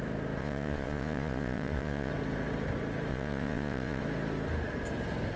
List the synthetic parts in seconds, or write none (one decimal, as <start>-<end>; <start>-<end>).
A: 0.4-2.1; 3.1-4.0